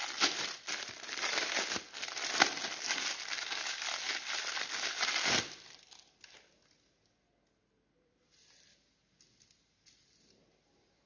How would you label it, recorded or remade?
recorded